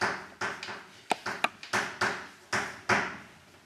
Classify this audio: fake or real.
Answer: real